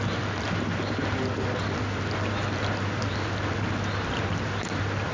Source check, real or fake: fake